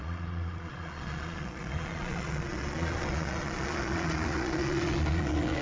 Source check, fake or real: fake